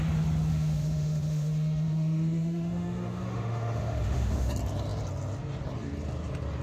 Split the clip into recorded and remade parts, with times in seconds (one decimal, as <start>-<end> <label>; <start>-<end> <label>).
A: 0.0-0.5 recorded; 0.5-4.5 remade; 4.5-6.6 recorded